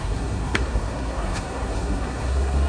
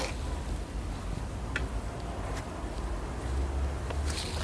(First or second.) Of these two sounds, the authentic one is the second